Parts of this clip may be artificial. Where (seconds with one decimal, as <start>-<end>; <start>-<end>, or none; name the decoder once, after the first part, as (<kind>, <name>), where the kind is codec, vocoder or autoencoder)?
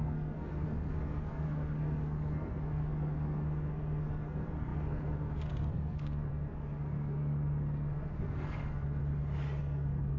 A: 0.0-9.0 (codec, SNAC); 9.6-10.2